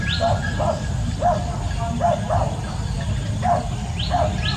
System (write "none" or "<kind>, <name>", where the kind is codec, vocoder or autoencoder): none